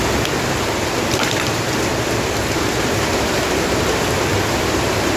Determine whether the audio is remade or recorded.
remade